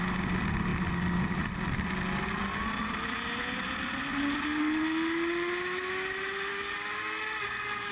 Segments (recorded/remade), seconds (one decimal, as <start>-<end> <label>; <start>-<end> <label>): 0.0-6.5 recorded; 6.5-7.9 remade